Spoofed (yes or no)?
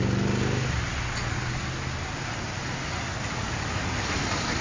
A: no